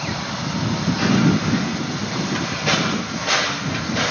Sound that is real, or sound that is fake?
real